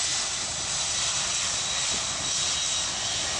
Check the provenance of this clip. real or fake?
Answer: real